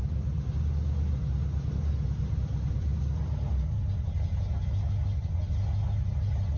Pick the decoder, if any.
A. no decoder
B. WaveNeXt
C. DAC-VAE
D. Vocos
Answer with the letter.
A